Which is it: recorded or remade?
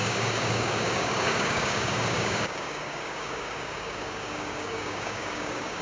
remade